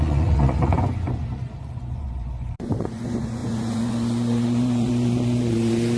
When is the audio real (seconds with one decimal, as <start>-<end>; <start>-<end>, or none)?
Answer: none